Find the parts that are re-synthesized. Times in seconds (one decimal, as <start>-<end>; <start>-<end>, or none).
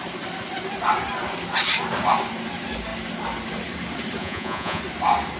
4.2-4.8